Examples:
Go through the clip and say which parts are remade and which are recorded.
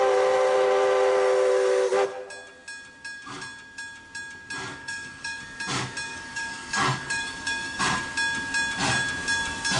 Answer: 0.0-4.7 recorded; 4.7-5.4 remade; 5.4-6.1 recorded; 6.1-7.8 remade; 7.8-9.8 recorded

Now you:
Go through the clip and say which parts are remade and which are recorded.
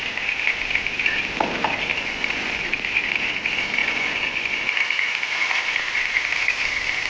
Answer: 0.0-1.9 recorded; 1.9-2.6 remade; 2.6-3.8 recorded; 3.8-4.6 remade; 4.6-7.1 recorded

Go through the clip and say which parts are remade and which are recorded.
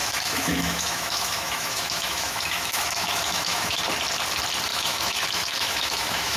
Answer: 0.0-3.8 remade; 3.8-4.7 recorded; 4.7-6.4 remade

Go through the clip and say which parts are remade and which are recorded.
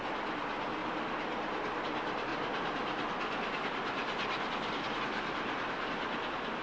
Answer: 0.0-0.8 recorded; 0.8-1.8 remade; 1.8-2.3 recorded; 2.3-6.6 remade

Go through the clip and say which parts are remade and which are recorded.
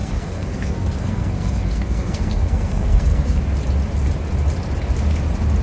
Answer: 0.0-3.4 remade; 3.4-5.6 recorded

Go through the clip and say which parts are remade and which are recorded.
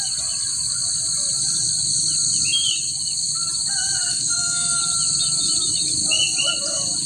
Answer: 0.0-4.1 recorded; 4.1-4.8 remade; 4.8-7.1 recorded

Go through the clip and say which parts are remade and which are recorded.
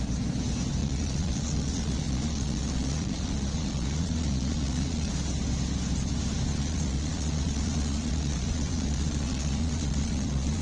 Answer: 0.0-0.8 recorded; 0.8-5.1 remade; 5.1-6.5 recorded; 6.5-10.6 remade